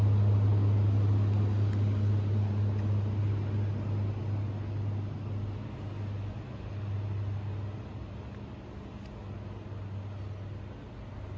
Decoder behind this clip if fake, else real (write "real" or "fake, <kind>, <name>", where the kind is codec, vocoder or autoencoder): real